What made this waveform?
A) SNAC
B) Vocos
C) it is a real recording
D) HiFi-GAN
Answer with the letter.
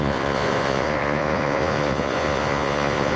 B